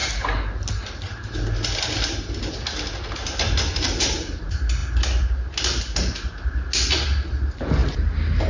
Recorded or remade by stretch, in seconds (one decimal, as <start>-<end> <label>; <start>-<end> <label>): 0.0-8.5 recorded